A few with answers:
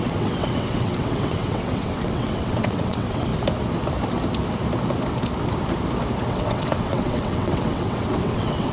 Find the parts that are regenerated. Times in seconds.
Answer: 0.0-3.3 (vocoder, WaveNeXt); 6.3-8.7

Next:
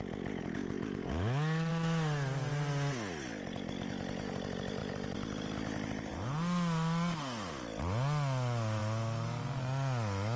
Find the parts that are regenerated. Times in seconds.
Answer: none